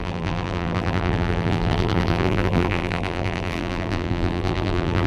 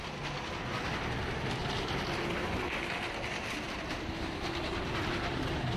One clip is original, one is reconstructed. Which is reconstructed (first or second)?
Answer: first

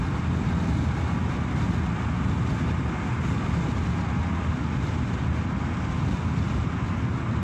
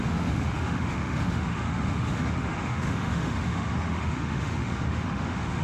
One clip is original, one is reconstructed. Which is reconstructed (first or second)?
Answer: second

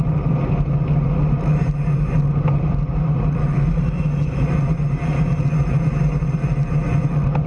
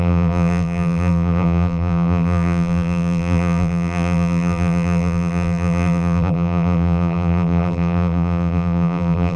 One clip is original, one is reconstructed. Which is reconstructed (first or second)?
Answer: second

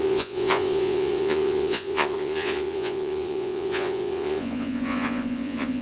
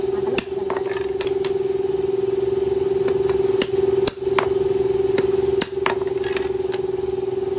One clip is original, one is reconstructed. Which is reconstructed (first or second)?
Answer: first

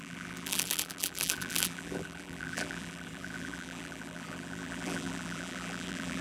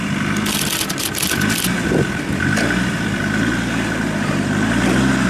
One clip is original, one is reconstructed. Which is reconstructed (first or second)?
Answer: first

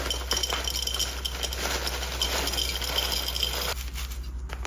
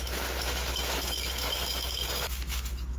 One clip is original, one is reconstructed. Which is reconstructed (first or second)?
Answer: second